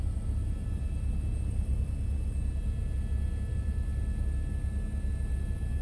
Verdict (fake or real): real